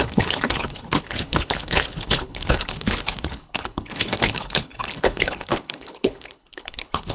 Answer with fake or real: fake